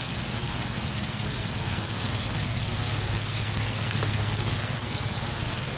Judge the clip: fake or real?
fake